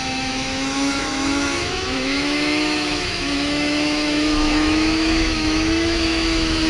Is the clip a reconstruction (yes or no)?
yes